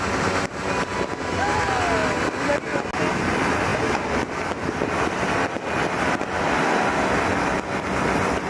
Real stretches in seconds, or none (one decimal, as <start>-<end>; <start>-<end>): 0.0-8.5